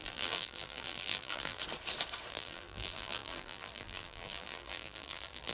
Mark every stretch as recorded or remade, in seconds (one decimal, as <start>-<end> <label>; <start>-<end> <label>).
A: 0.0-1.6 remade; 1.6-2.3 recorded; 2.3-5.5 remade